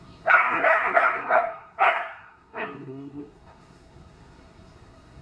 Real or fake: fake